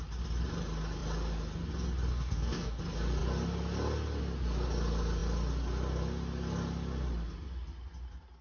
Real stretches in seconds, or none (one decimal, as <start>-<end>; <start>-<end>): 0.0-2.1; 2.8-8.4